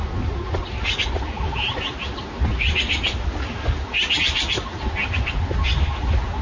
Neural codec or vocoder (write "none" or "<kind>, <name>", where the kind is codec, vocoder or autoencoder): none